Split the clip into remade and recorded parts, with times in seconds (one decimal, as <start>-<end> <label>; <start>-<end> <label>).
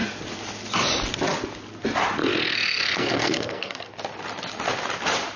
0.0-2.2 recorded; 2.2-3.9 remade; 3.9-5.4 recorded